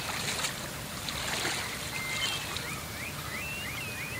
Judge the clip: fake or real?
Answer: real